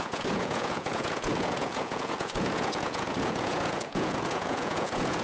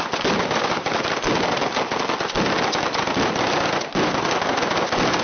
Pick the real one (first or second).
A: second